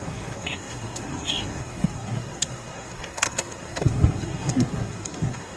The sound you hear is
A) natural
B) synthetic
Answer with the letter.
B